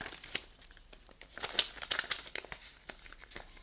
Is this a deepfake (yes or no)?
no